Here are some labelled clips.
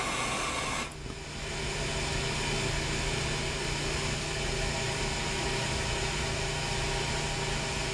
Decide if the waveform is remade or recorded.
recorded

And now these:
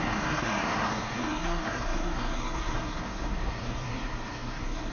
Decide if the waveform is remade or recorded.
remade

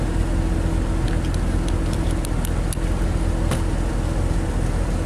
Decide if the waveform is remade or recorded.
recorded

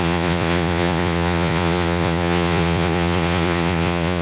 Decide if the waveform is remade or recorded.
remade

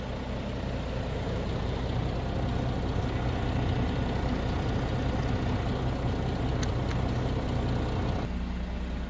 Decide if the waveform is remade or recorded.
recorded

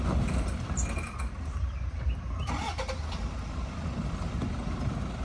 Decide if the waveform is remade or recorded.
recorded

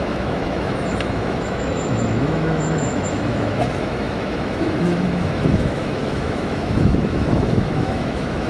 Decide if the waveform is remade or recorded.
remade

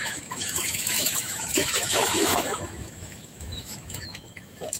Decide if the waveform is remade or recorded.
remade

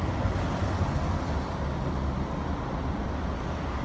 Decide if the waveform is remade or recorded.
recorded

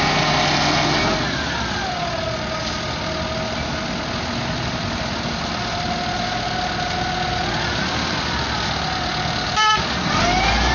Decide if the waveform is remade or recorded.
recorded